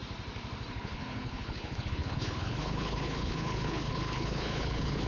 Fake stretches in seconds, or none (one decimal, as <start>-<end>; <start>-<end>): 0.7-5.1

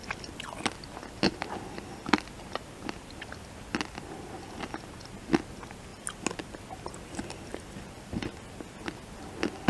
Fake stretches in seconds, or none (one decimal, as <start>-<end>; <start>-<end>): none

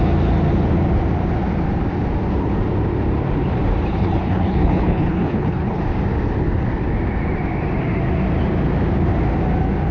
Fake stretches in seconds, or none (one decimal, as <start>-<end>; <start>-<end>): 3.9-5.8

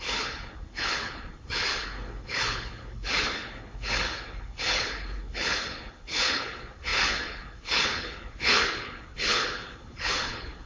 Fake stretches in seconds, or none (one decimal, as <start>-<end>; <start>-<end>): 0.0-10.7

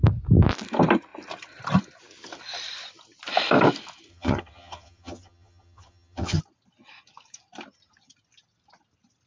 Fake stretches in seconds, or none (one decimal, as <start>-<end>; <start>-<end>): 4.1-6.4

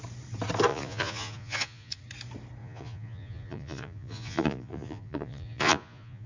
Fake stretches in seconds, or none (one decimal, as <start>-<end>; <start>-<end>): 0.7-2.0; 2.6-6.3

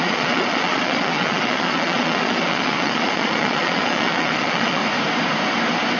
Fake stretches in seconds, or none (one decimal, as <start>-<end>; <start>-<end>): 0.0-4.8